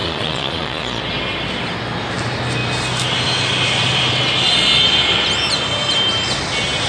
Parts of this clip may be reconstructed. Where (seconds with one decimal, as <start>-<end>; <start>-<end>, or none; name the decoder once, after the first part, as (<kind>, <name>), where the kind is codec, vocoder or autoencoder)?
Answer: 0.0-1.0 (vocoder, Vocos)